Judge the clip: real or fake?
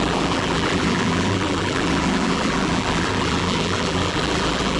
fake